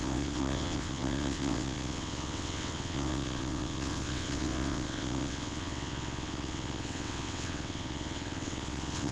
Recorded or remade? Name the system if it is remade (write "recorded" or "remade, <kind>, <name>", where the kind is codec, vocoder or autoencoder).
remade, vocoder, WaveNeXt